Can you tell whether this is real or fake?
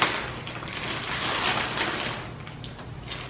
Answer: real